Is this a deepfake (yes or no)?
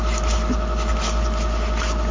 no